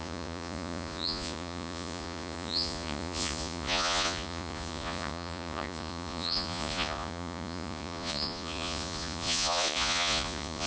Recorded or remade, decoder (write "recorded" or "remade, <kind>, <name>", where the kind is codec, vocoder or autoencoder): remade, vocoder, Vocos